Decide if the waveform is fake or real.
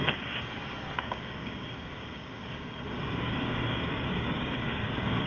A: fake